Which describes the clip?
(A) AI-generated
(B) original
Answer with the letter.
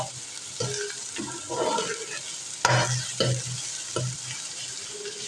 B